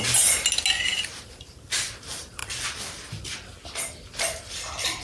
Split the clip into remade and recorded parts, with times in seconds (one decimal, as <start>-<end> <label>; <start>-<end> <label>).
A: 0.0-5.0 recorded